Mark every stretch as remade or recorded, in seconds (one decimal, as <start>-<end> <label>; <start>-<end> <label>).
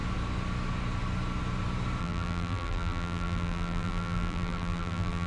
0.0-2.0 recorded; 2.0-5.3 remade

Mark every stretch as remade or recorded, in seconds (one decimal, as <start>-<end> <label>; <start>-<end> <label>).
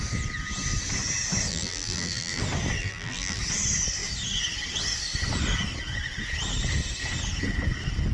0.0-1.5 recorded; 1.5-2.4 remade; 2.4-2.8 recorded; 2.8-3.4 remade; 3.4-8.1 recorded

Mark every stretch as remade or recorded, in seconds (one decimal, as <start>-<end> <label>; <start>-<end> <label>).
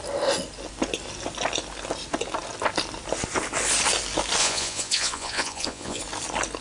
0.0-4.4 recorded; 4.4-6.0 remade; 6.0-6.6 recorded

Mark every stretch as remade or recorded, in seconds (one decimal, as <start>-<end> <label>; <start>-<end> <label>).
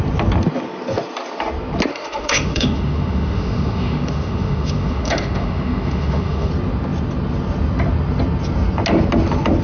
0.0-1.9 recorded; 1.9-6.5 remade; 6.5-9.6 recorded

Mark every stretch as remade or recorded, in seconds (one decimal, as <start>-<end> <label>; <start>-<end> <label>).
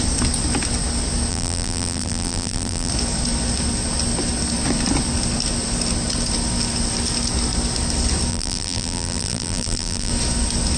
0.0-1.3 recorded; 1.3-2.9 remade; 2.9-8.3 recorded; 8.3-10.1 remade; 10.1-10.8 recorded